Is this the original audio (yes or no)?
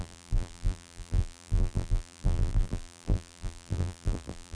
no